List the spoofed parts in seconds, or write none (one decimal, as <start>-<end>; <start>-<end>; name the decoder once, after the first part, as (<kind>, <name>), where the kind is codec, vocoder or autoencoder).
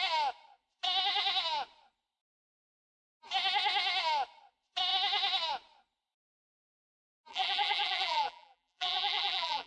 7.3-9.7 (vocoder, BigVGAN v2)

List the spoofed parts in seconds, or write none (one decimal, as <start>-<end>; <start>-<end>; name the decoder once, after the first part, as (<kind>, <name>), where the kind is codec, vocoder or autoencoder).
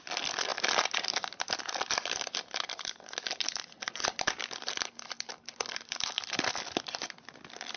none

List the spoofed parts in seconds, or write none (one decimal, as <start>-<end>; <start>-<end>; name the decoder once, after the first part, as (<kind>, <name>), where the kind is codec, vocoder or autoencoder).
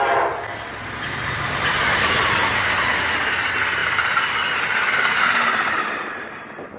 1.9-2.4 (vocoder, BigVGAN v2)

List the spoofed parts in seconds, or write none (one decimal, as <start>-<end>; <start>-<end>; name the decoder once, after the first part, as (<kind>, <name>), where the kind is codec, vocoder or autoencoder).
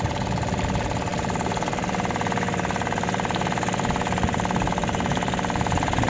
none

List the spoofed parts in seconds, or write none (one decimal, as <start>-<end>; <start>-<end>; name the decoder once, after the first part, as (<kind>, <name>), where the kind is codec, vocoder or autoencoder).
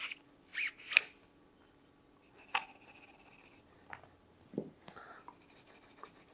none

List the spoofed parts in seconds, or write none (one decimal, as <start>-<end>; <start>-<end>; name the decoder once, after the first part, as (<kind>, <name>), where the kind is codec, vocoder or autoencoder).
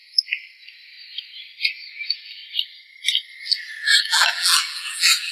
1.9-2.4 (vocoder, BigVGAN v2); 4.0-5.3